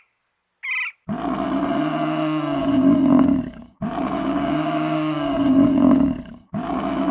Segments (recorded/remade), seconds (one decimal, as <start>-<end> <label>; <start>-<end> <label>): 0.0-2.6 recorded; 2.6-7.1 remade